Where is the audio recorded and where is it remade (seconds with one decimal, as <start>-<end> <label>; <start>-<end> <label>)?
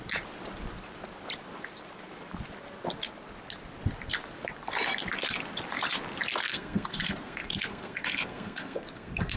0.0-6.5 recorded; 6.5-9.4 remade